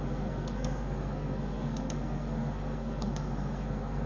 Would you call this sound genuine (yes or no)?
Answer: no